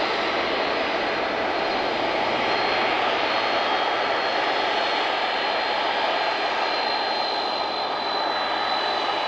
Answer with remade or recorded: recorded